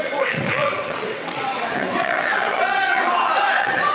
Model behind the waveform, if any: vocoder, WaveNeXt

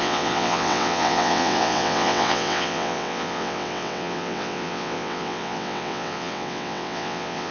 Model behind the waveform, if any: vocoder, WaveNeXt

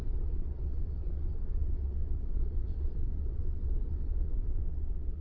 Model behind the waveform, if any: vocoder, WaveNeXt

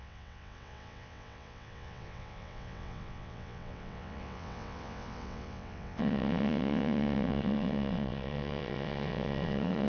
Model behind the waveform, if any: vocoder, WaveNeXt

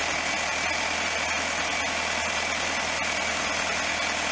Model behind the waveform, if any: none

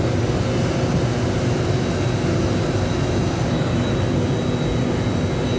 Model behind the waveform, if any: none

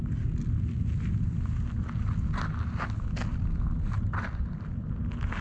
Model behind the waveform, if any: none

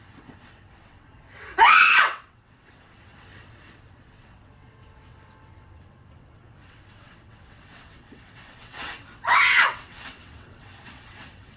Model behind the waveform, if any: vocoder, WaveNeXt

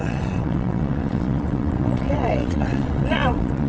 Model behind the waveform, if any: vocoder, WaveNeXt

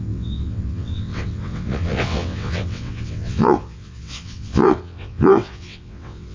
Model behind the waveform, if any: vocoder, WaveNeXt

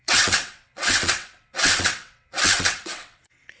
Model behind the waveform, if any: vocoder, WaveNeXt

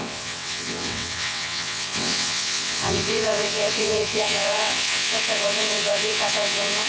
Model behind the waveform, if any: vocoder, WaveNeXt